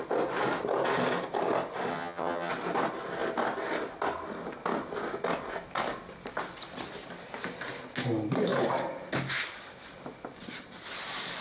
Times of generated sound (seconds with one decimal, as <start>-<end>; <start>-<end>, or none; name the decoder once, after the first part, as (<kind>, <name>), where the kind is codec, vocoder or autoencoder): 1.9-2.5 (vocoder, HiFi-GAN)